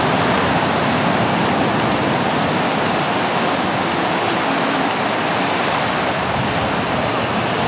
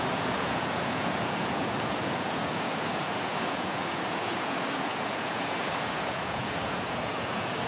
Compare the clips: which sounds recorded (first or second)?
first